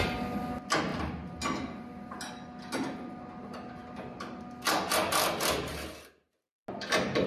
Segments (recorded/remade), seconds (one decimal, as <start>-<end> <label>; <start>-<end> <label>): 0.0-7.3 recorded